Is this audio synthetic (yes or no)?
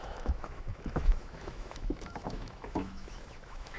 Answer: yes